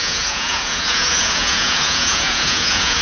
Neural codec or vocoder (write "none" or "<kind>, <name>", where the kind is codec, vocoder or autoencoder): vocoder, Vocos